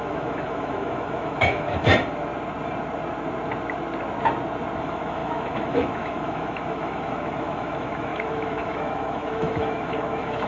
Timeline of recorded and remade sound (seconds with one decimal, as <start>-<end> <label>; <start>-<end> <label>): 0.0-1.9 remade; 1.9-4.8 recorded; 4.8-10.5 remade